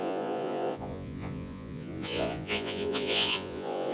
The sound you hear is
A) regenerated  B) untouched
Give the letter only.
A